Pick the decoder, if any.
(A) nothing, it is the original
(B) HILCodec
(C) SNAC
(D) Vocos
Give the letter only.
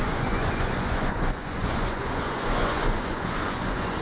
D